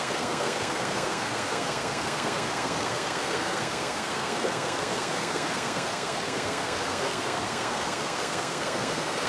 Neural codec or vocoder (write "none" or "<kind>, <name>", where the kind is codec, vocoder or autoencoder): codec, SNAC